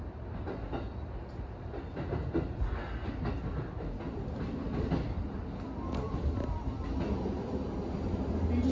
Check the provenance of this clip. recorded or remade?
recorded